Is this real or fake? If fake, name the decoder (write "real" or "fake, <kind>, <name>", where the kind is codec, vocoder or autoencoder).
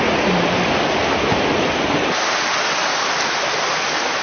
real